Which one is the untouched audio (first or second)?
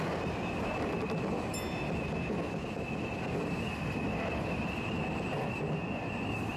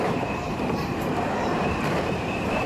first